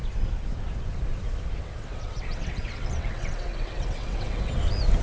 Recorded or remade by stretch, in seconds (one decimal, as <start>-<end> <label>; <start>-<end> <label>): 0.0-1.7 recorded; 1.7-4.5 remade; 4.5-5.0 recorded